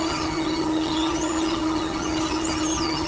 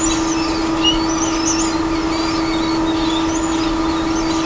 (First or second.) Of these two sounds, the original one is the second